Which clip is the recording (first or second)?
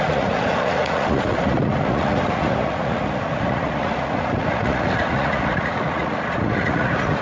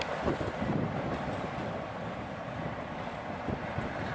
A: second